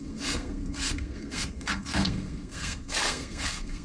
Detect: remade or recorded remade